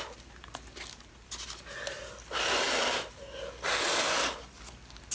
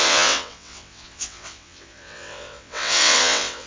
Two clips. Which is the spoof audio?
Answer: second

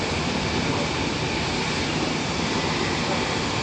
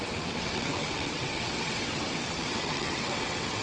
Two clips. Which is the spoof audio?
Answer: second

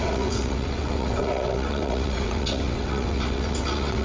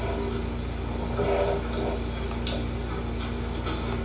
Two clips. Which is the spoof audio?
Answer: first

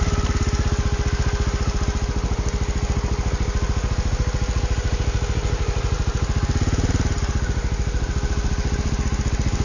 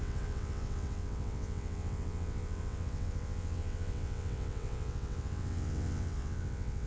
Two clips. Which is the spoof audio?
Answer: second